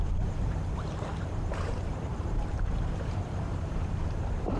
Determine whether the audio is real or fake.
fake